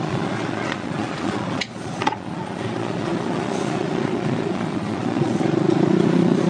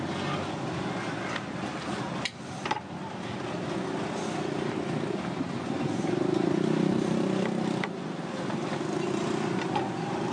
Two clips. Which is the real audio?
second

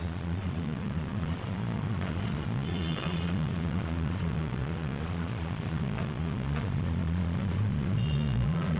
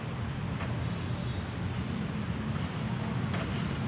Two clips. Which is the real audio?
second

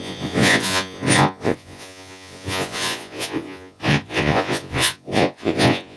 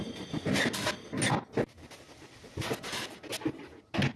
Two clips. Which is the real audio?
second